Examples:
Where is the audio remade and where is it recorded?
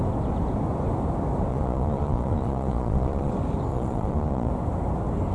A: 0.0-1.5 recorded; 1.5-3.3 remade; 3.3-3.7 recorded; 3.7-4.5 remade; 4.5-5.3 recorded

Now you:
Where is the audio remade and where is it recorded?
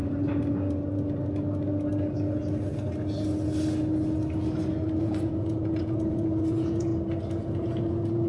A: 0.0-5.0 recorded; 5.0-6.9 remade; 6.9-7.4 recorded; 7.4-8.3 remade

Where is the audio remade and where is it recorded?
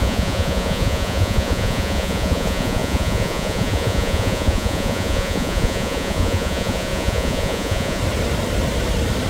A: 0.0-8.0 remade; 8.0-9.3 recorded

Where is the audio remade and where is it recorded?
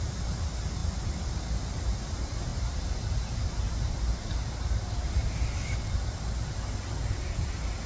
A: 0.0-7.9 recorded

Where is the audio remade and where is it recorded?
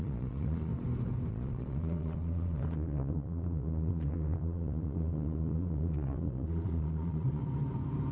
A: 0.0-0.7 remade; 0.7-1.3 recorded; 1.3-7.4 remade; 7.4-8.1 recorded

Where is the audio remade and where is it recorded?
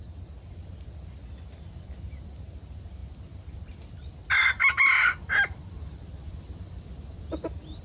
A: 0.0-7.8 recorded